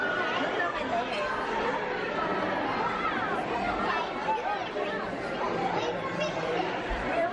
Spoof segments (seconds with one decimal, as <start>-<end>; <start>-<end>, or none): 4.6-7.3